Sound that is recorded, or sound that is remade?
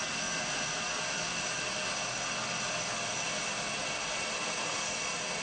recorded